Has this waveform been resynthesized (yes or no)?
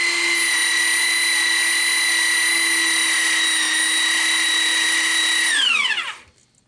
no